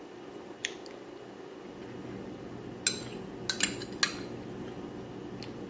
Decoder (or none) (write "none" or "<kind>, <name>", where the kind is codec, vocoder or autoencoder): none